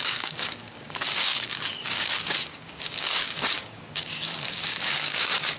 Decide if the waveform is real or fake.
fake